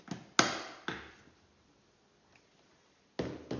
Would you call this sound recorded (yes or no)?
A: yes